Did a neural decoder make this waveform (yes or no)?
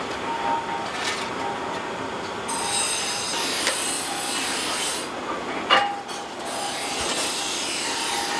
no